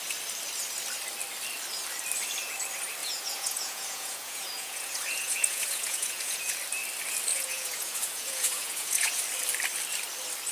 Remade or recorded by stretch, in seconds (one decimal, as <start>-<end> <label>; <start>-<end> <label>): 0.0-3.0 recorded; 3.0-6.6 remade; 6.6-7.3 recorded; 7.3-9.2 remade; 9.2-10.5 recorded